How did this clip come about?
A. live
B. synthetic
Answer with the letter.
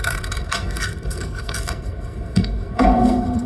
B